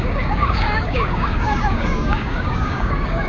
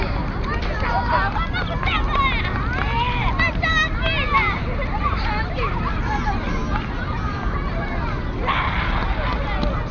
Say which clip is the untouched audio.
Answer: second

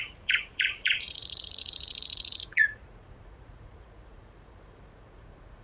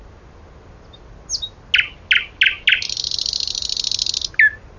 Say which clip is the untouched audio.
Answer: second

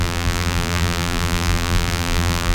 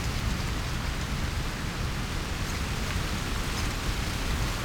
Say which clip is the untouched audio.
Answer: second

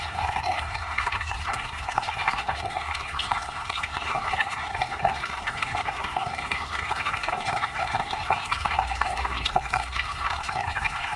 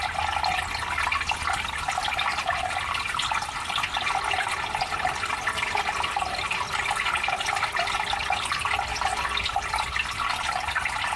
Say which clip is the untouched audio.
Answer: second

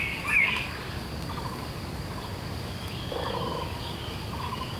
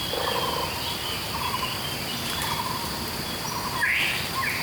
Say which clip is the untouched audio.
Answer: second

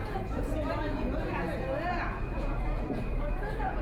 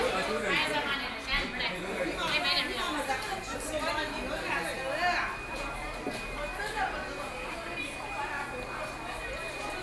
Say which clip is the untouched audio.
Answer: second